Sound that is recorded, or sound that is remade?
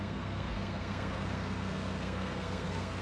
remade